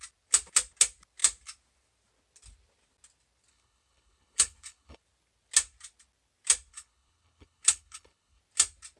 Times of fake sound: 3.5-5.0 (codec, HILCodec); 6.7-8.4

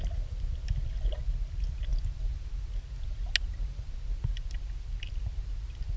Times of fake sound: none